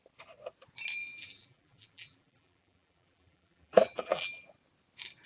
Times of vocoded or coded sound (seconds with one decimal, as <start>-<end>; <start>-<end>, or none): 1.1-4.3